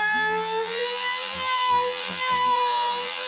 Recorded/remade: remade